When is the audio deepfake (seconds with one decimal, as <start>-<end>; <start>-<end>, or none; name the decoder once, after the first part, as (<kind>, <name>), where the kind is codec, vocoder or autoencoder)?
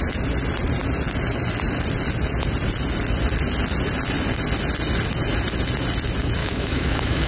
6.4-7.3 (autoencoder, DAC-VAE)